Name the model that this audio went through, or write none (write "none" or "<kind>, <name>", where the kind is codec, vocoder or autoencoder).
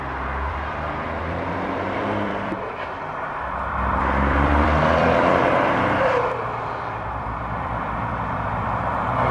vocoder, BigVGAN v2